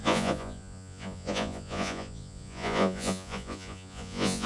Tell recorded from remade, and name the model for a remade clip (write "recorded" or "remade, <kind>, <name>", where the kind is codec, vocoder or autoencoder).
remade, vocoder, Vocos